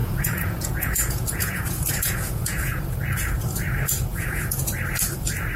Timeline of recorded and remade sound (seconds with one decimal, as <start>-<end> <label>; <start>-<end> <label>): 0.0-2.8 remade; 2.8-4.1 recorded; 4.1-4.7 remade; 4.7-5.6 recorded